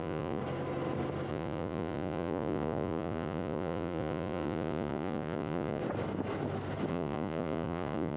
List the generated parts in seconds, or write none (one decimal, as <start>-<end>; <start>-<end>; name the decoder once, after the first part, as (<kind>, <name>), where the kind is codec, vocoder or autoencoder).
0.0-0.4 (vocoder, Vocos); 1.3-5.8; 6.9-8.2